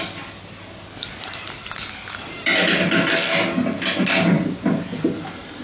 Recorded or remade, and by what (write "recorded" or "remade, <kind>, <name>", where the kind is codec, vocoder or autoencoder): recorded